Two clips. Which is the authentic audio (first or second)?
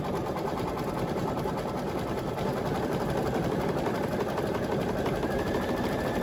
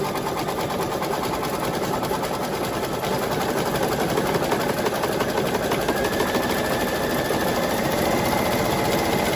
second